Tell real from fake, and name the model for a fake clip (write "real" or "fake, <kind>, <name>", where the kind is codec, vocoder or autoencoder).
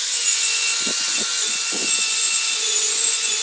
fake, vocoder, Vocos